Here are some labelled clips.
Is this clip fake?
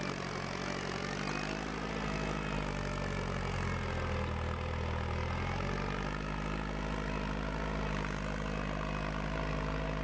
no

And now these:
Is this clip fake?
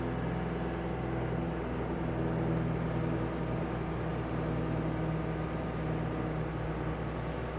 no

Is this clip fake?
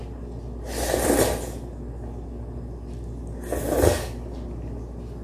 no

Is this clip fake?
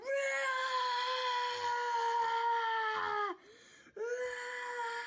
no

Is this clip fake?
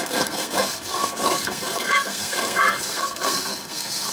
yes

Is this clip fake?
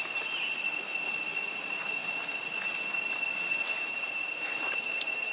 no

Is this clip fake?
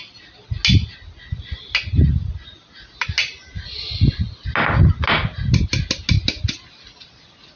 no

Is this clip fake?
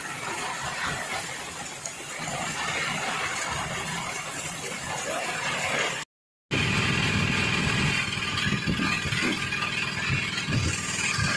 no